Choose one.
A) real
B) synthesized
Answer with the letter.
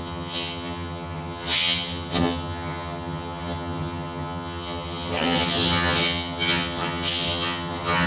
B